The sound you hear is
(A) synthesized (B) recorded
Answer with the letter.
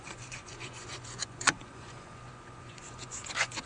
A